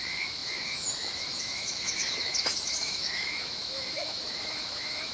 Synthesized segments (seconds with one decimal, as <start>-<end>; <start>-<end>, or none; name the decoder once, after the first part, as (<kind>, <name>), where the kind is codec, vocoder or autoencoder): 0.0-5.1 (autoencoder, DAC-VAE)